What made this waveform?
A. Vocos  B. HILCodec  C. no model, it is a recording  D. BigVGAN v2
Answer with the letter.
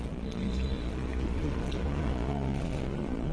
A